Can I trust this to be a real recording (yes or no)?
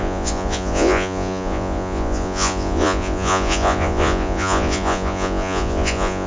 no